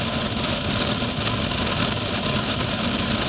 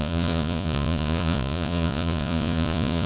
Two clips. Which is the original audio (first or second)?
first